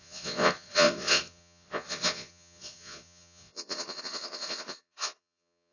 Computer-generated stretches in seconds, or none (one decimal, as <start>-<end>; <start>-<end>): 0.0-5.7